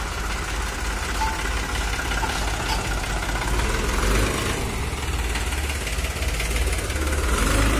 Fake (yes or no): no